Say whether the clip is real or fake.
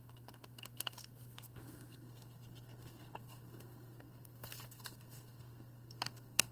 fake